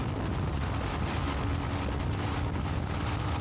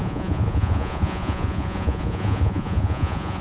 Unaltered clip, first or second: first